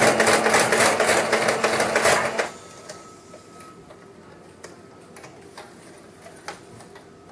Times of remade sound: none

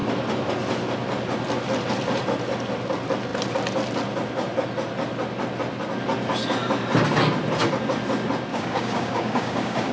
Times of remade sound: 8.5-9.9 (codec, DAC)

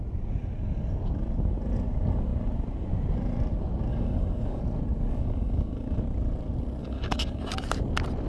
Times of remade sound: 3.9-4.6 (codec, DAC); 5.1-6.0; 6.8-7.4

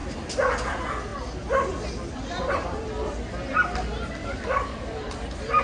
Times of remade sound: 4.2-5.0 (codec, DAC)